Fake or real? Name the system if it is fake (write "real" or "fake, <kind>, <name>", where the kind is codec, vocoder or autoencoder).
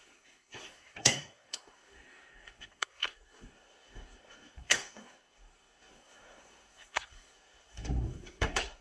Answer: fake, codec, SNAC